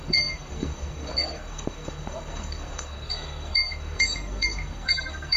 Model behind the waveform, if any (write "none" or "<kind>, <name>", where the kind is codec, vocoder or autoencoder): codec, SNAC